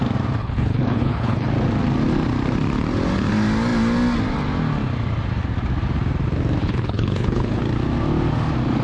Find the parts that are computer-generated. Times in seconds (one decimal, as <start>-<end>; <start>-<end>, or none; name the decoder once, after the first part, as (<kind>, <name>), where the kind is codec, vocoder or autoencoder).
0.4-1.5 (codec, HILCodec); 6.6-7.6